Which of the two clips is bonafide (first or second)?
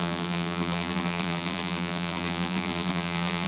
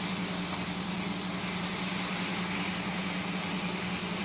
second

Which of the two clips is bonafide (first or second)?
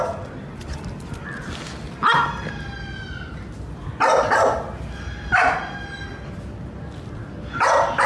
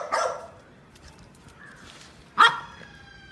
first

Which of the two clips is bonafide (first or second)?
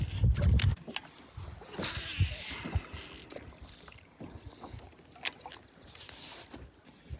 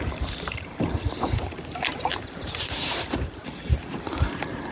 first